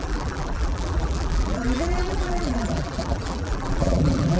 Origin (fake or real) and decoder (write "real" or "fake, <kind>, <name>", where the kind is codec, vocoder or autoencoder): fake, vocoder, BigVGAN v2